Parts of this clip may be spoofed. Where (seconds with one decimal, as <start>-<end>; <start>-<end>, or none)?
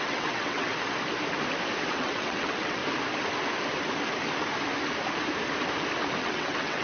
0.0-0.7; 1.9-2.8; 6.2-6.8